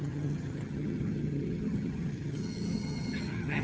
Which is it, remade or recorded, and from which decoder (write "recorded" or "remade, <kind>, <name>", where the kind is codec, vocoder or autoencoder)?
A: remade, vocoder, HiFi-GAN